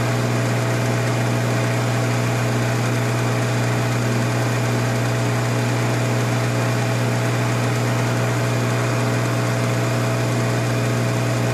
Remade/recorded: recorded